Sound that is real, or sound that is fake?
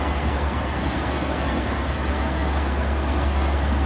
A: fake